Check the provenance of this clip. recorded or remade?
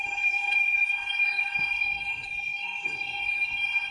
remade